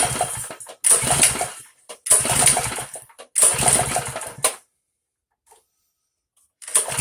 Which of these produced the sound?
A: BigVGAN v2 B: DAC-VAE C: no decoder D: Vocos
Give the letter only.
C